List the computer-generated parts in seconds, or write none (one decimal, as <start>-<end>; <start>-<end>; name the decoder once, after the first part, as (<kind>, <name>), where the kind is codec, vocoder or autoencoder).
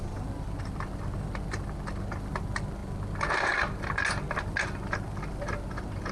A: none